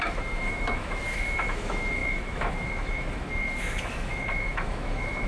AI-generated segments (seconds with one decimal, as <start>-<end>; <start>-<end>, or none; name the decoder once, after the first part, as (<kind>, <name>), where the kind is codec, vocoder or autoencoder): 0.0-5.3 (autoencoder, DAC-VAE)